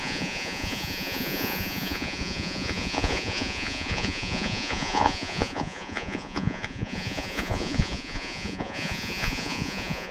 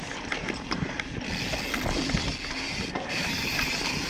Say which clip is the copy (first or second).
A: first